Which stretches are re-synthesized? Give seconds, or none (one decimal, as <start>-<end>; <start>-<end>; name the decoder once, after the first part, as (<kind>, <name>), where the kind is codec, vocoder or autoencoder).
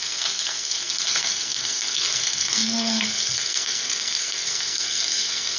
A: 0.0-5.6 (codec, SNAC)